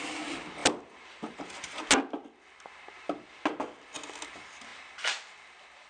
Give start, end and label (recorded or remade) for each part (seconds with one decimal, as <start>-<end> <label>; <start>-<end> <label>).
0.0-0.6 recorded; 0.6-1.8 remade; 1.8-5.9 recorded